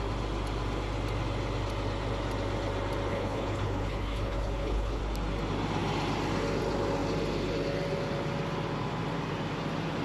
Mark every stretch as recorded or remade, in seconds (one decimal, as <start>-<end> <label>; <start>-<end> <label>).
0.0-3.1 recorded; 3.1-5.0 remade; 5.0-10.0 recorded